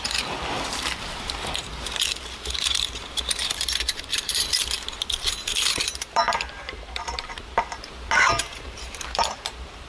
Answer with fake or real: fake